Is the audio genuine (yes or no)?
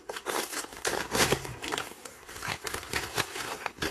no